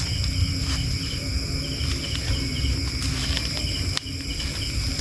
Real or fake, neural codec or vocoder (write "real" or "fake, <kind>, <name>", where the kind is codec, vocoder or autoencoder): real